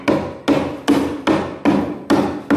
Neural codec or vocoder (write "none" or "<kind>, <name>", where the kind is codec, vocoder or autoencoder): none